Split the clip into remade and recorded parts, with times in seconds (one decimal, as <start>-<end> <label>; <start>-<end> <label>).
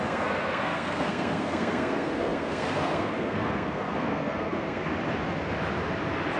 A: 0.0-4.9 remade; 4.9-6.4 recorded